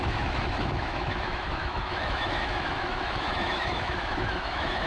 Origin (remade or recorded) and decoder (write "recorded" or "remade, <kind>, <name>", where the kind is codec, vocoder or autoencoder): remade, autoencoder, DAC-VAE